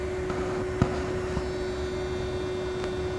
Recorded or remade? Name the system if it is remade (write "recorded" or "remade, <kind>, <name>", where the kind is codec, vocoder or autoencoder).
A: recorded